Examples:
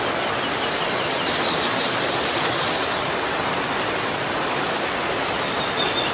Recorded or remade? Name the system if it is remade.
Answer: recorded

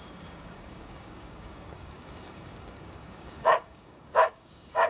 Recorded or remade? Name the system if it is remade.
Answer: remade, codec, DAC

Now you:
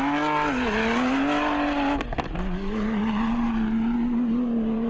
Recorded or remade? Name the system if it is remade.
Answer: recorded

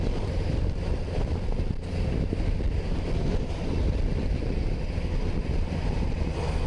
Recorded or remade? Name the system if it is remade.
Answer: recorded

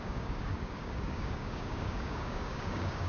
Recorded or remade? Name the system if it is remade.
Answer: remade, codec, DAC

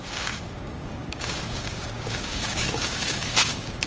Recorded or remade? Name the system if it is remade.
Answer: remade, codec, DAC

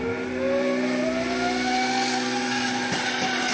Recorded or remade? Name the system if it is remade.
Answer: recorded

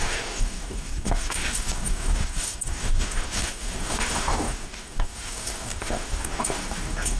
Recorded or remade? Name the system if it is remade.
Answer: remade, codec, DAC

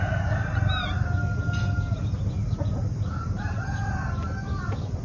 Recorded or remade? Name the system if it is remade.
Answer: recorded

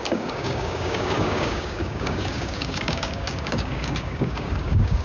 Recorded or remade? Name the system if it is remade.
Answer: remade, codec, DAC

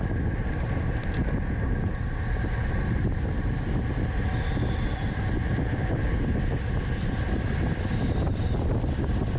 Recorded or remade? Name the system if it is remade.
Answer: recorded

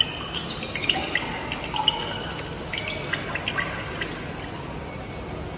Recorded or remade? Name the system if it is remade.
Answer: recorded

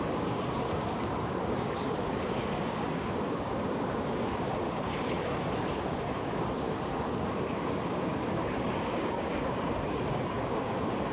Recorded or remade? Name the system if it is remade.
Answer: remade, codec, DAC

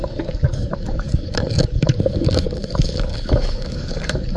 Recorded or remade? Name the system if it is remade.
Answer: remade, codec, DAC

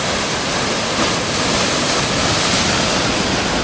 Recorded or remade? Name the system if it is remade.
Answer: recorded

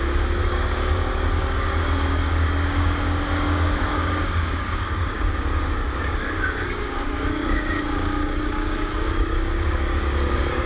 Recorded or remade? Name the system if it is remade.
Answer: remade, codec, DAC